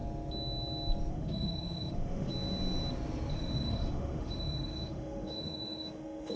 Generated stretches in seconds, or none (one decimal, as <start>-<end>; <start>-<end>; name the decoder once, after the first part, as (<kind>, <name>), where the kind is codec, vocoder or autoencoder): 1.1-2.3 (autoencoder, DAC-VAE); 3.3-6.4